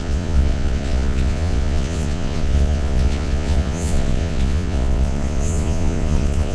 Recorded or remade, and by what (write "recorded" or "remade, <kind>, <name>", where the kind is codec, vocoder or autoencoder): remade, vocoder, Vocos